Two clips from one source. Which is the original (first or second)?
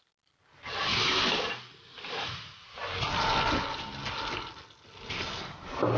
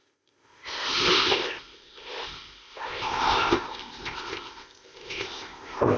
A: first